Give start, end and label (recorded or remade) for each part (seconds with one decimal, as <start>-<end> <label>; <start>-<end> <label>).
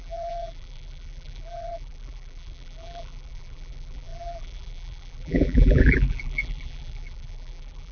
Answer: 0.0-7.9 remade